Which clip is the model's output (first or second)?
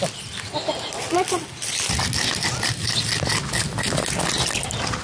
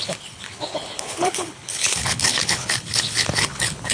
second